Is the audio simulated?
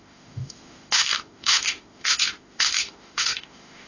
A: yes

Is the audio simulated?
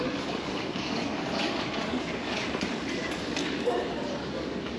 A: yes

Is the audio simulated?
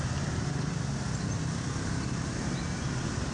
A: no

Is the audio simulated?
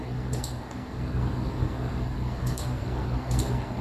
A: yes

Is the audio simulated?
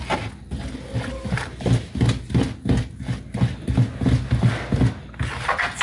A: no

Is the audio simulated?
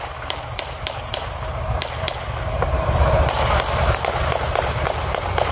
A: yes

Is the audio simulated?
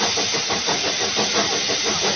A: no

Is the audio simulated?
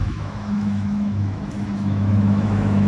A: yes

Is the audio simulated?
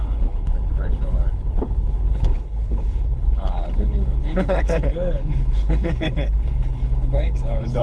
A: yes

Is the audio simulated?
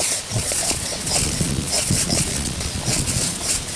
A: yes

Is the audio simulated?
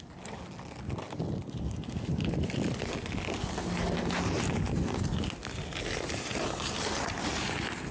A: no